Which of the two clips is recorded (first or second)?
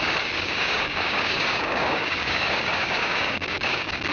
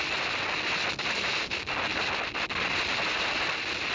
second